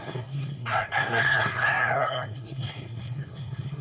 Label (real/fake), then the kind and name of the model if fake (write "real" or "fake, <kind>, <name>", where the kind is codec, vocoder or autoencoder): fake, codec, SNAC